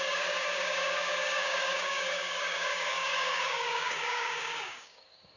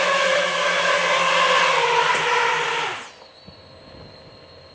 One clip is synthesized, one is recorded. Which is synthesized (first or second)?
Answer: first